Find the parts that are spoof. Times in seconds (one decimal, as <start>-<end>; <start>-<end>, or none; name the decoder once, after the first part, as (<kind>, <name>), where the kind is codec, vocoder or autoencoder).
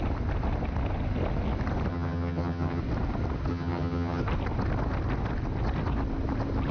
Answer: 1.9-2.8 (vocoder, HiFi-GAN); 3.5-4.2